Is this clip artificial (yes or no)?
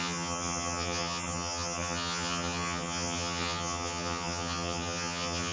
yes